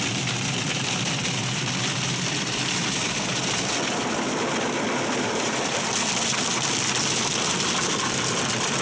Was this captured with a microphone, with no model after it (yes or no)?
yes